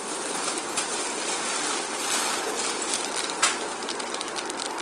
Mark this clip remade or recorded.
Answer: recorded